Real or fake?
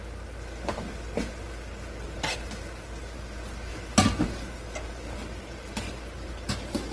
real